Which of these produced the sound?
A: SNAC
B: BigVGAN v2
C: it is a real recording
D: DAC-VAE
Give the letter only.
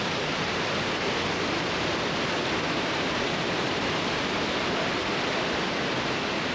C